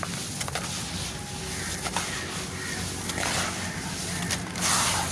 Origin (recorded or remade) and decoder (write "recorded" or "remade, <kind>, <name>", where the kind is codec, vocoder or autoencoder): recorded